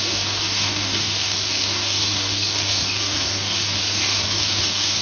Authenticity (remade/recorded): remade